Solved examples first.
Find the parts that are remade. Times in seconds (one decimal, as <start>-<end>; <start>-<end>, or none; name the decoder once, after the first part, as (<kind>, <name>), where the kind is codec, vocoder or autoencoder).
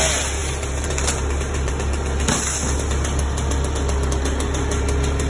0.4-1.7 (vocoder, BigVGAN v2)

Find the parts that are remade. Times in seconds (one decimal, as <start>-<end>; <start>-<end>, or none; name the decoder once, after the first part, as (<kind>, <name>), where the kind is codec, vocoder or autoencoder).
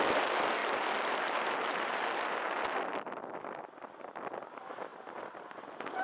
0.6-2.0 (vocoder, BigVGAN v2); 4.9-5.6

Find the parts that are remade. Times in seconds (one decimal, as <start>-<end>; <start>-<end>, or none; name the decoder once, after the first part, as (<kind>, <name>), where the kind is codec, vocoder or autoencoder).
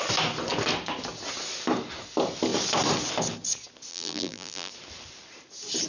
3.9-4.7 (vocoder, BigVGAN v2)